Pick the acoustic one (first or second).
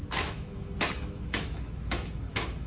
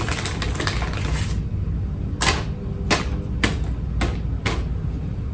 second